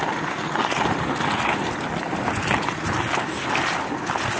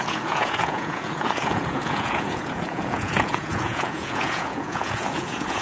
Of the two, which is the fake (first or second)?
second